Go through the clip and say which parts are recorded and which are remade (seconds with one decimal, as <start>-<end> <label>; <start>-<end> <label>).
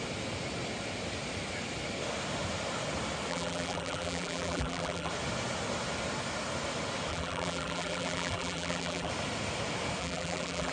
0.0-3.3 recorded; 3.3-5.1 remade; 5.1-7.1 recorded; 7.1-9.1 remade; 9.1-10.0 recorded; 10.0-10.7 remade